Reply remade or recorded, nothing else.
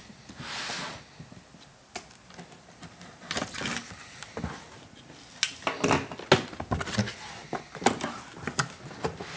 recorded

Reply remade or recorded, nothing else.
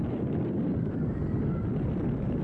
recorded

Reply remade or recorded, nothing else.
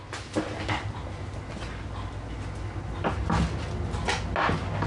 recorded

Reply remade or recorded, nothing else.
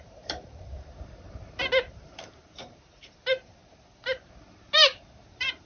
remade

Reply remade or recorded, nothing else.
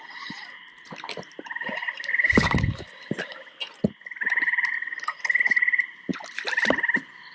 recorded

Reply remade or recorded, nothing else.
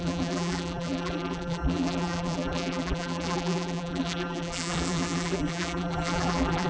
remade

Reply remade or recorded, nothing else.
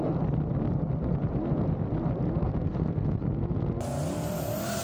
recorded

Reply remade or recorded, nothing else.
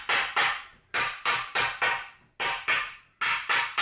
recorded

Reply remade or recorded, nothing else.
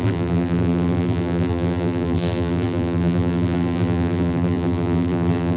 remade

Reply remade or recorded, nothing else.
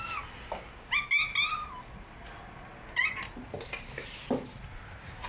recorded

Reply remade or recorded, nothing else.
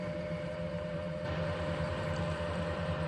remade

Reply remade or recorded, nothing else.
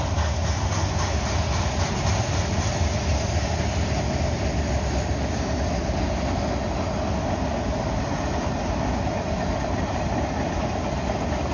recorded